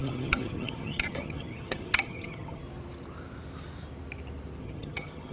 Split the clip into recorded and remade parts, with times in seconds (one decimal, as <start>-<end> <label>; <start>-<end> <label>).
0.0-2.6 remade; 2.6-4.6 recorded; 4.6-5.3 remade